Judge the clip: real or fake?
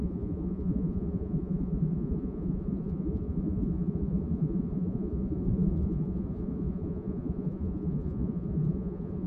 fake